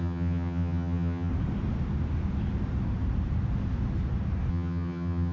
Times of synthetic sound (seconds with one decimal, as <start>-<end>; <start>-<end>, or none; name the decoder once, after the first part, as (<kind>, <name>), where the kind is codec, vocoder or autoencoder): 0.0-1.3 (vocoder, HiFi-GAN); 4.5-5.3

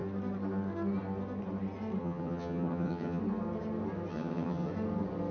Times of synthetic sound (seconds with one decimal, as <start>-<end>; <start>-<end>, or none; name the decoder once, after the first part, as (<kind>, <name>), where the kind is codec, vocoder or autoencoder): 2.0-3.2 (vocoder, HiFi-GAN); 4.1-4.7

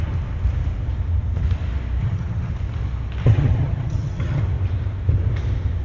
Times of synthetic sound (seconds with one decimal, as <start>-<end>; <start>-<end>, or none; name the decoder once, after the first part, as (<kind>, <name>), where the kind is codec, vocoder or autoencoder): 2.0-2.5 (vocoder, HiFi-GAN); 3.2-4.4

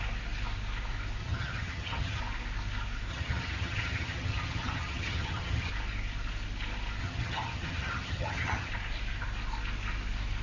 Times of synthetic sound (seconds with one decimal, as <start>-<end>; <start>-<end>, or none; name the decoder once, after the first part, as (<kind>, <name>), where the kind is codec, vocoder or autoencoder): 1.2-2.2 (vocoder, HiFi-GAN); 3.1-5.7; 7.0-8.7

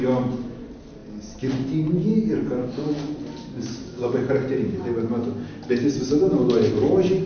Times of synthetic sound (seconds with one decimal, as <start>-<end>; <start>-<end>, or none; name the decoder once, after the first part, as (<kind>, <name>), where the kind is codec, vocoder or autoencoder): none

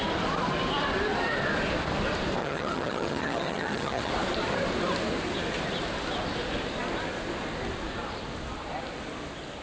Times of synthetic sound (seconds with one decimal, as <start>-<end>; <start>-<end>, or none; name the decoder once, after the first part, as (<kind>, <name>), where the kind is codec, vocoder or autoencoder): 2.4-4.1 (vocoder, HiFi-GAN)